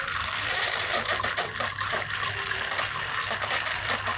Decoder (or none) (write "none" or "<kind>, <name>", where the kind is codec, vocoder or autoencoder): vocoder, BigVGAN v2